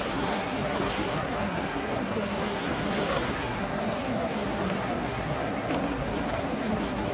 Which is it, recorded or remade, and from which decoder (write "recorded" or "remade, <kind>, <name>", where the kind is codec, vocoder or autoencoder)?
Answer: remade, codec, SNAC